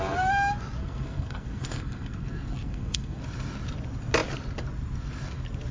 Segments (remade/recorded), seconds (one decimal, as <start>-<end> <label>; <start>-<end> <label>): 0.0-0.8 recorded; 0.8-3.2 remade; 3.2-5.7 recorded